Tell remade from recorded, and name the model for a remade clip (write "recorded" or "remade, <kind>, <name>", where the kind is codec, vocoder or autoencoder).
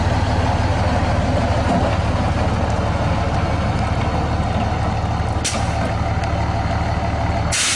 recorded